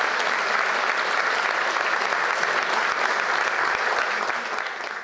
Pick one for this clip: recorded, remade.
recorded